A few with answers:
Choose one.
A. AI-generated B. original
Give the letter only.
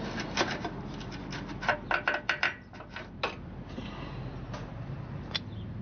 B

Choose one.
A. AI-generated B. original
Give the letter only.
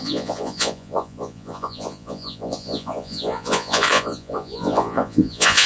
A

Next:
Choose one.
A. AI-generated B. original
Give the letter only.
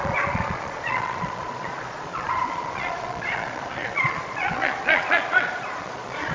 A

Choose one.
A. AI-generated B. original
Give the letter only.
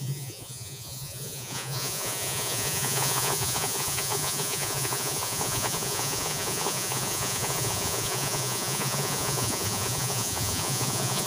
A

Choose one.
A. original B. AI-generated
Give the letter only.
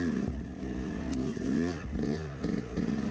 B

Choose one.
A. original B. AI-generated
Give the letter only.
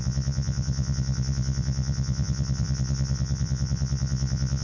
B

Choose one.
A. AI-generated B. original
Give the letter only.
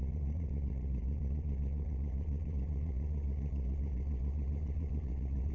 A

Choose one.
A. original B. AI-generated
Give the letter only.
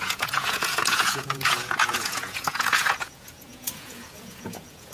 B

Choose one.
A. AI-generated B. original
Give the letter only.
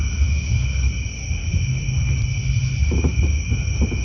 B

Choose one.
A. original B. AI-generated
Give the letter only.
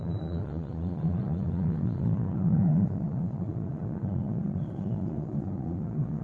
B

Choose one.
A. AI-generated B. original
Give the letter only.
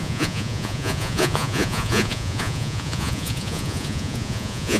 A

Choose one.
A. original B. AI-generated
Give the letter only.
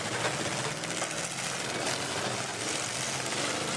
A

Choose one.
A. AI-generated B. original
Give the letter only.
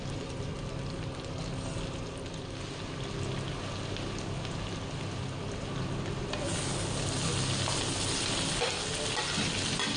B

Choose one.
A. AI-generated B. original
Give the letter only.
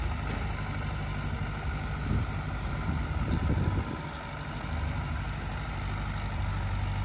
B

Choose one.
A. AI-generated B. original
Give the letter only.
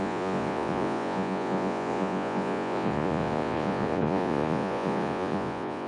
A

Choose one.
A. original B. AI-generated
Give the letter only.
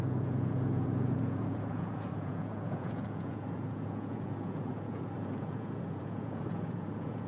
B